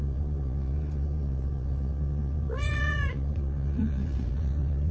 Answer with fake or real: fake